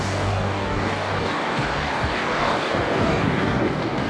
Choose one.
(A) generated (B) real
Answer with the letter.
A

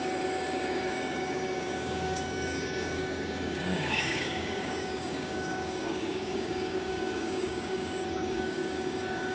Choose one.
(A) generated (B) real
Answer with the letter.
A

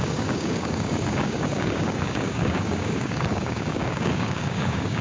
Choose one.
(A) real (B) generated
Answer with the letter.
B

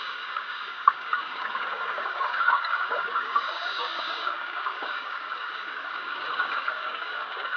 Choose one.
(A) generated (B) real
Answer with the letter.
A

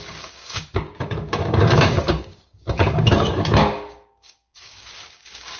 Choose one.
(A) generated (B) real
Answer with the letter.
A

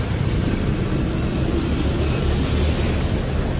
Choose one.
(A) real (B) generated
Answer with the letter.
A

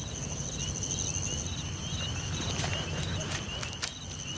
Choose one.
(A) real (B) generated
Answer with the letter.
A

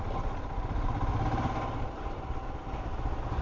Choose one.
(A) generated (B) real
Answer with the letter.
B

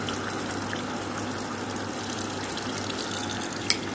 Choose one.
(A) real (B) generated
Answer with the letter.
A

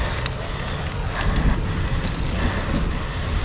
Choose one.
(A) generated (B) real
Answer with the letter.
B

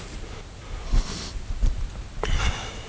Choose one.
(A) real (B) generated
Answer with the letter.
A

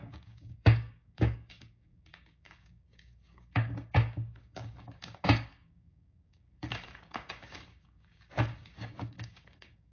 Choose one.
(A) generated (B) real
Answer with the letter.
A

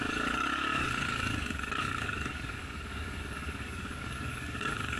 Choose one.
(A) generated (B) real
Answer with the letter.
A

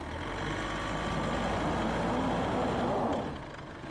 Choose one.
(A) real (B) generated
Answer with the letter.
A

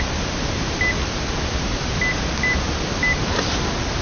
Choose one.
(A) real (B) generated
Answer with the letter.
A